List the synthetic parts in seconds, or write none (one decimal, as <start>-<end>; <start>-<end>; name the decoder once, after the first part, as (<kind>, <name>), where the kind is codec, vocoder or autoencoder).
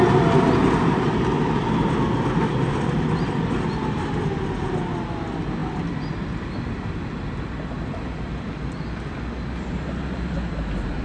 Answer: none